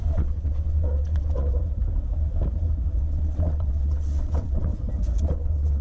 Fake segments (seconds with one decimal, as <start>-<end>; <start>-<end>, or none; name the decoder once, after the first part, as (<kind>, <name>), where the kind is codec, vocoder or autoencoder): 0.0-1.5 (vocoder, WaveNeXt); 3.0-4.7; 5.2-5.8